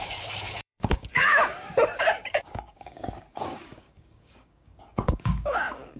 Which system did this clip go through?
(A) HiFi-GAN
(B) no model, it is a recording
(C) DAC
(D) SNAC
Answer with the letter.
C